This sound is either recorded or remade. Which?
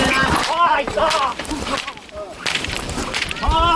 remade